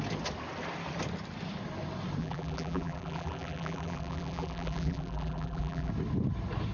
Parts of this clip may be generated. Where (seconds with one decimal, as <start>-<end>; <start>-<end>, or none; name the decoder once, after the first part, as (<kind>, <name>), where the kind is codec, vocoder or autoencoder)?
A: 2.2-5.9 (vocoder, BigVGAN v2)